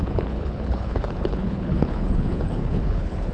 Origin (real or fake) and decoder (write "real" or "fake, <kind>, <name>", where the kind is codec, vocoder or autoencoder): fake, codec, HILCodec